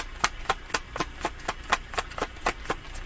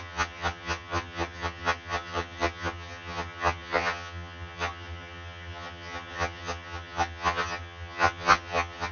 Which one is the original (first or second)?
first